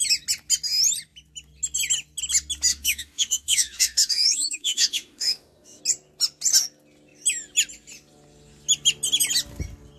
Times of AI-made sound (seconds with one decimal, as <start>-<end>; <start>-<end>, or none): 2.7-5.8